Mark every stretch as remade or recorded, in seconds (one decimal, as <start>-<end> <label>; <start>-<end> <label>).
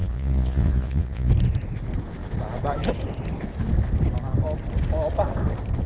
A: 0.0-1.3 remade; 1.3-5.9 recorded